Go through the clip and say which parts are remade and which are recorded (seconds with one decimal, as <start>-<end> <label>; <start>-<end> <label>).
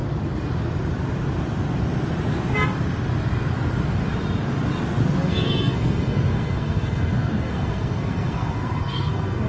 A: 0.0-5.2 recorded; 5.2-9.5 remade